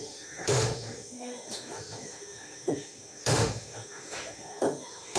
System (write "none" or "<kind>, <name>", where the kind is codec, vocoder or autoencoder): autoencoder, DAC-VAE